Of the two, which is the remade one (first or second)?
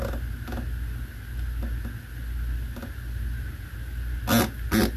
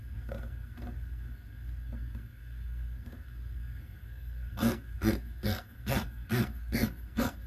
second